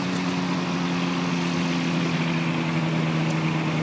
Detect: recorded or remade recorded